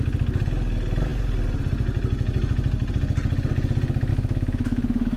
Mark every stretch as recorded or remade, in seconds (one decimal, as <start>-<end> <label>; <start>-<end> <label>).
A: 0.0-4.1 recorded; 4.1-5.2 remade